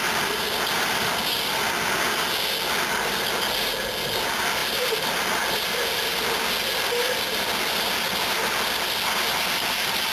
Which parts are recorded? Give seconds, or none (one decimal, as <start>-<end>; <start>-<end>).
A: 0.0-10.1